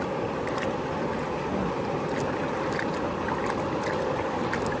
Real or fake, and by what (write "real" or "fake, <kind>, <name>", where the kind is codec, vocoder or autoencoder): real